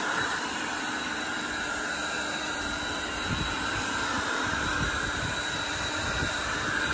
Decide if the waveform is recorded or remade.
remade